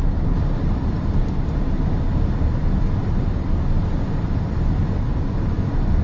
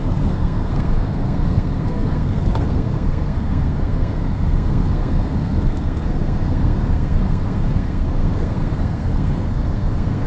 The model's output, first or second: second